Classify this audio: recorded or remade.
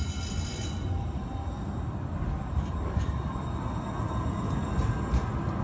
recorded